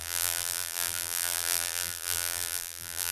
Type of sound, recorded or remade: remade